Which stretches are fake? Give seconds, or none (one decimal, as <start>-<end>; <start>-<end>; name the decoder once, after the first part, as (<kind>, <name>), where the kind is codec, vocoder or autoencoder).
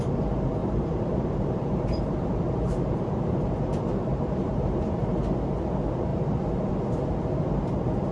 0.6-5.5 (vocoder, BigVGAN v2); 6.1-6.7